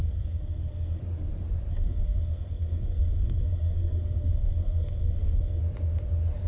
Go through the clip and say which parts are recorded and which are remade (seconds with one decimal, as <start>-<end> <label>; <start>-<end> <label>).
0.0-1.0 remade; 1.0-1.7 recorded; 1.7-5.6 remade; 5.6-6.5 recorded